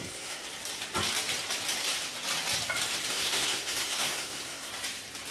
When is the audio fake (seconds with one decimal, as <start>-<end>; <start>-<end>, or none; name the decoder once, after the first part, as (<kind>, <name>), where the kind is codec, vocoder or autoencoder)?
0.0-0.4 (codec, SNAC); 3.1-4.7